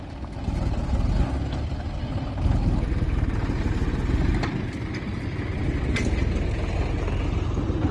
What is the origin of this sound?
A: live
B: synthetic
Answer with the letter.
A